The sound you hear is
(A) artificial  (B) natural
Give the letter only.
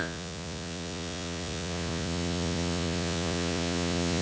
A